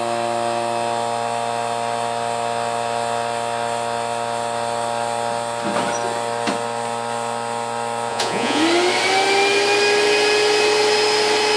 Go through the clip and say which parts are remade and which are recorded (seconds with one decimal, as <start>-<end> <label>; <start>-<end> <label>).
0.0-8.1 recorded; 8.1-8.6 remade; 8.6-11.6 recorded